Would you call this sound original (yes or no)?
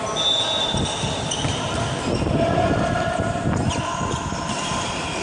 yes